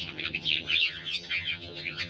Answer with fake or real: fake